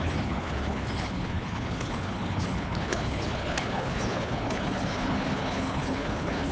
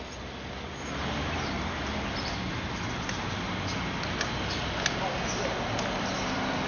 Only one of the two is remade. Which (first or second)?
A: first